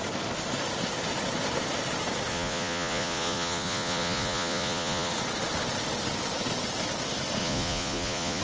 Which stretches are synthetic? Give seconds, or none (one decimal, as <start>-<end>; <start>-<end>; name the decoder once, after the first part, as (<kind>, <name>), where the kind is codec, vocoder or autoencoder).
2.3-5.1 (vocoder, Vocos); 7.4-8.4